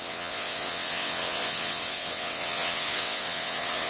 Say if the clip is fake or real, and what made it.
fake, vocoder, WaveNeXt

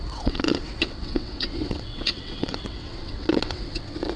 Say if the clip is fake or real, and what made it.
fake, vocoder, WaveNeXt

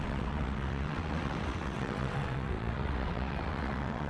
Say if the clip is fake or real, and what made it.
fake, vocoder, WaveNeXt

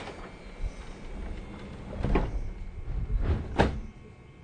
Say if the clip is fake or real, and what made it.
real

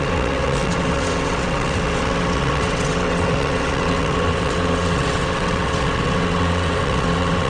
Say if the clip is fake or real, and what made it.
fake, vocoder, WaveNeXt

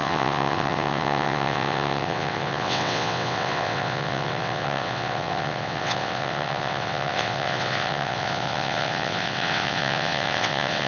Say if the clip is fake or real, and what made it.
fake, vocoder, WaveNeXt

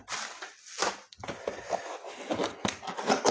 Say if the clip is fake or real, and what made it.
real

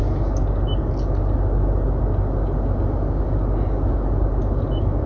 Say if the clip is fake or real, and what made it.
real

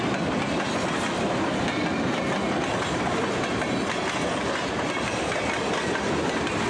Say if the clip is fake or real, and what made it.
real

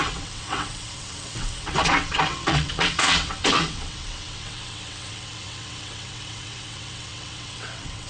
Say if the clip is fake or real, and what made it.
fake, vocoder, WaveNeXt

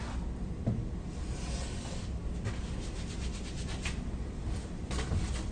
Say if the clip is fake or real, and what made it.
real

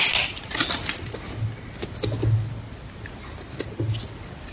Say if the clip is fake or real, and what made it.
real